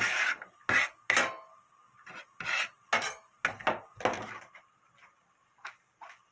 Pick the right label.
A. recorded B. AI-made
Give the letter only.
A